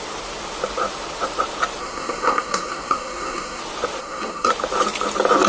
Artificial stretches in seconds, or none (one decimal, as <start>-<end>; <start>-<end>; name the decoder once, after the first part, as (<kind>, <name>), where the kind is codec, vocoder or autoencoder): 1.8-3.6 (codec, SNAC); 4.0-4.5